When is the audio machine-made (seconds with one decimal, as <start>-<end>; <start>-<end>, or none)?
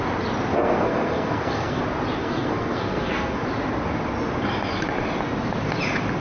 0.5-1.8; 2.2-3.4